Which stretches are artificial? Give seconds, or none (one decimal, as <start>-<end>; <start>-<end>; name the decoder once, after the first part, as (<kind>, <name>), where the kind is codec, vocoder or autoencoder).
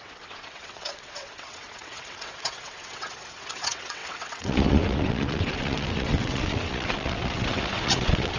0.0-8.4 (vocoder, WaveNeXt)